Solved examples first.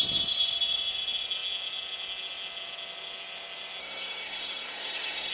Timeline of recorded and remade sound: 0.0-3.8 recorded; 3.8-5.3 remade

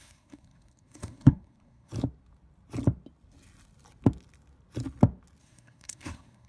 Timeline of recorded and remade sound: 0.0-1.9 remade; 1.9-5.4 recorded; 5.4-6.5 remade

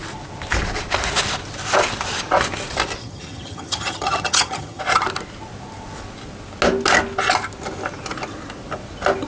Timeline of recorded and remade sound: 0.0-3.0 recorded; 3.0-4.8 remade; 4.8-9.3 recorded